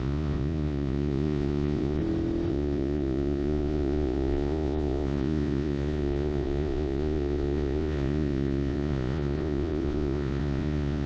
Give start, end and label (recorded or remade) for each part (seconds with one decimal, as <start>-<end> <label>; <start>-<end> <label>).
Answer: 0.0-2.0 remade; 2.0-2.5 recorded; 2.5-11.1 remade